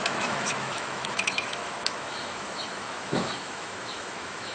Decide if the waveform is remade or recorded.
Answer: remade